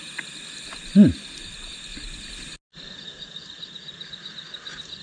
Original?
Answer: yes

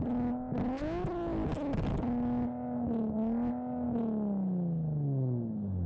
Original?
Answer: yes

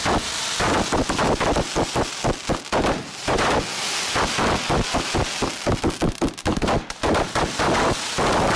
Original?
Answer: yes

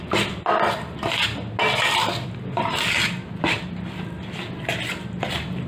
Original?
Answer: yes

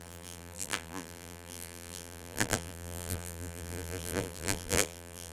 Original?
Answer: no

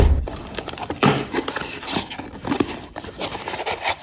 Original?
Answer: no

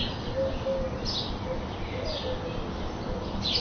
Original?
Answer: yes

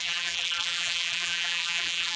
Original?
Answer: no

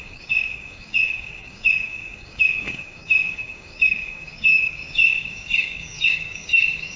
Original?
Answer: no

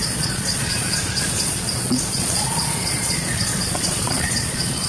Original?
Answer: no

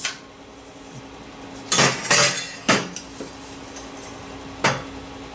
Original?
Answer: yes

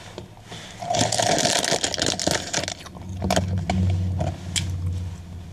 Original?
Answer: yes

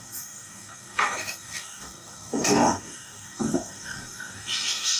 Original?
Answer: no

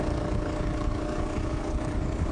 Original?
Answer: no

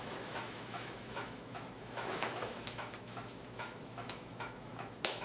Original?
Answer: no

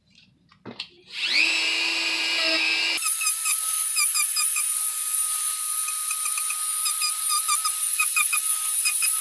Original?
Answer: no